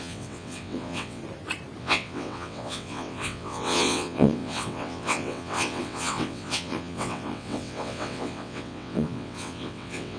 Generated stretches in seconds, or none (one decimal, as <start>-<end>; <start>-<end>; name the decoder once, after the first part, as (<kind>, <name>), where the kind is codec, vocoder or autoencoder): 0.0-1.2 (vocoder, WaveNeXt); 1.8-10.2